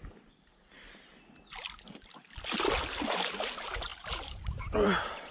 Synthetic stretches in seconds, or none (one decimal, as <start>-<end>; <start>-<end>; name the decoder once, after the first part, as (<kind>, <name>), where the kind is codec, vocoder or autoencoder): 3.9-4.6 (vocoder, BigVGAN v2)